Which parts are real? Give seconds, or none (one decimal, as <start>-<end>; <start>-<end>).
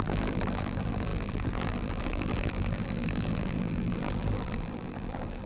none